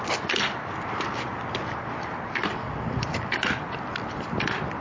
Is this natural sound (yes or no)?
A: yes